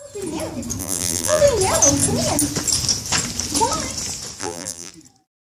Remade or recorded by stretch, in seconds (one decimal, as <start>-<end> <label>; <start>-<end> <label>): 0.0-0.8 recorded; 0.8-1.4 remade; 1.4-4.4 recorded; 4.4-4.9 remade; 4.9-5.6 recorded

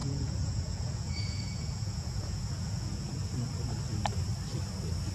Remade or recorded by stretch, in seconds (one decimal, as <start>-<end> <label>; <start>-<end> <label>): 0.0-3.1 remade; 3.1-5.1 recorded

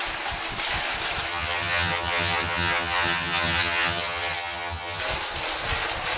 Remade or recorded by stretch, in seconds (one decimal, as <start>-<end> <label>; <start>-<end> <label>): 0.0-1.3 recorded; 1.3-5.0 remade; 5.0-6.2 recorded

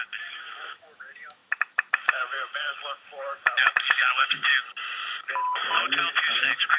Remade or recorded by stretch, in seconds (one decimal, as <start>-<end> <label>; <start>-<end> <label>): 0.0-4.5 remade; 4.5-6.3 recorded; 6.3-6.8 remade